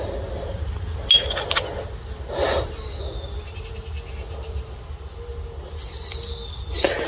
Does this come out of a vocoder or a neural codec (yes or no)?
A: no